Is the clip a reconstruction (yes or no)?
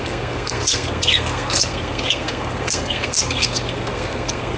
yes